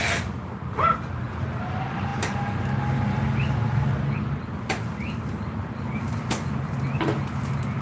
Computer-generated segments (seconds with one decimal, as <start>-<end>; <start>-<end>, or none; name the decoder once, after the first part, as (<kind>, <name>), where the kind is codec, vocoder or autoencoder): none